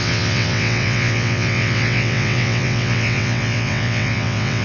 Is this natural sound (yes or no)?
no